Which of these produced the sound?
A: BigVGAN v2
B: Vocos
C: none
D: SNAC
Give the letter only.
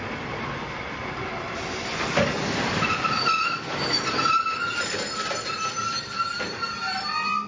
A